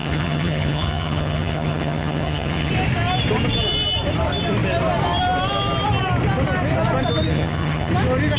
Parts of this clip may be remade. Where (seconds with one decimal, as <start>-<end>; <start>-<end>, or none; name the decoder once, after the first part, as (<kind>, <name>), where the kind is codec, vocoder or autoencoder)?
0.0-2.7 (vocoder, HiFi-GAN); 7.3-7.9